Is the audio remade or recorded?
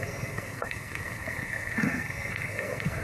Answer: remade